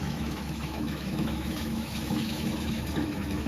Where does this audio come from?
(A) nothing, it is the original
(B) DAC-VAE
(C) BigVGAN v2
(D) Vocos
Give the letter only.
B